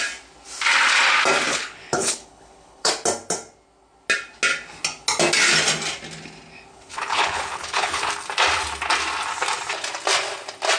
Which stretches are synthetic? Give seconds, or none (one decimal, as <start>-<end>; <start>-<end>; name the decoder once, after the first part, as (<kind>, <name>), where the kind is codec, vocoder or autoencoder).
1.5-2.9 (codec, HILCodec); 6.7-8.1